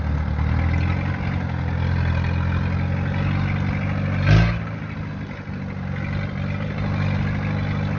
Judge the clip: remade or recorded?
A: recorded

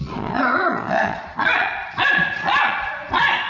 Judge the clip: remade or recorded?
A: remade